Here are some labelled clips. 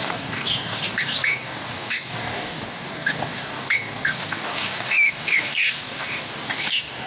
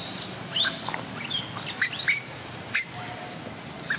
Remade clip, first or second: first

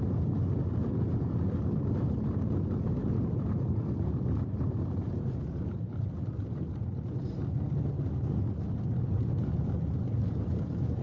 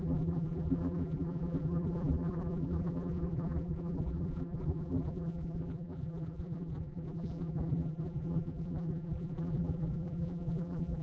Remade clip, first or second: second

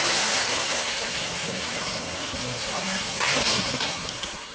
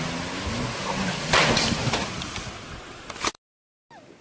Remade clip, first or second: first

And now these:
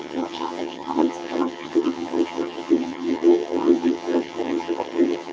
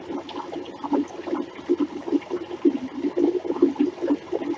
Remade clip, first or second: first